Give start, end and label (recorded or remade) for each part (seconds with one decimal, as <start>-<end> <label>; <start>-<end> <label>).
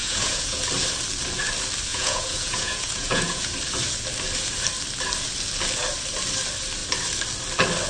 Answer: 0.0-0.6 remade; 0.6-1.9 recorded; 1.9-3.5 remade; 3.5-7.9 recorded